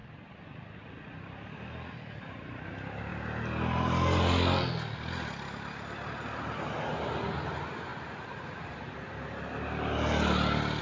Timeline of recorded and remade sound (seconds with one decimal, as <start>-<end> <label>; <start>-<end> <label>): 0.0-10.8 recorded